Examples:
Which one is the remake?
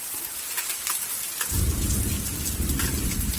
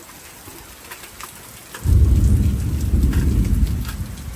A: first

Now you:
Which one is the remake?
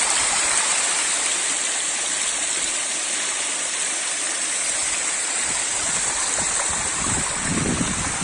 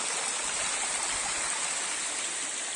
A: first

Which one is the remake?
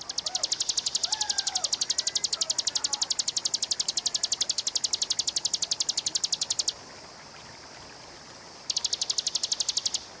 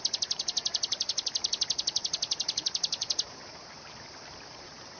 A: second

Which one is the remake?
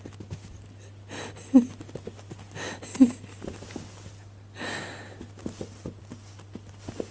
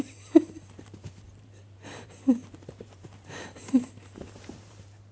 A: second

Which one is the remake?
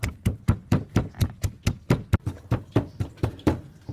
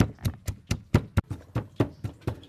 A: first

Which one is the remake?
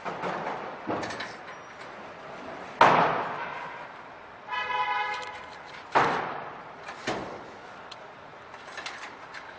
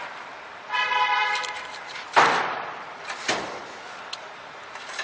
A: second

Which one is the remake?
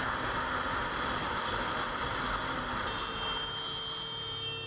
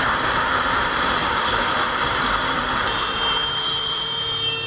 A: second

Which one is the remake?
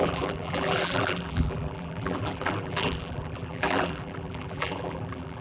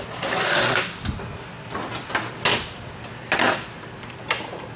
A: first